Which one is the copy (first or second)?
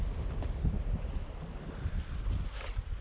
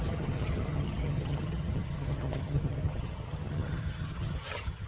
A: second